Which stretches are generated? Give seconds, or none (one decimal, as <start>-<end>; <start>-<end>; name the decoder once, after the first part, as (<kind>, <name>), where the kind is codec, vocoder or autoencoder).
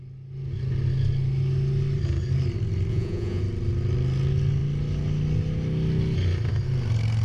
2.9-3.4 (vocoder, Vocos)